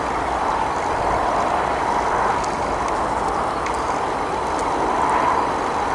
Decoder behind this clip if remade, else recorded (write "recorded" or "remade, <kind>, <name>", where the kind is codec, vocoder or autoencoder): recorded